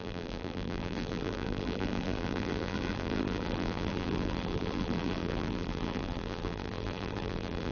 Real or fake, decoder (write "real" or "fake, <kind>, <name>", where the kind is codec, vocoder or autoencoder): fake, vocoder, BigVGAN v2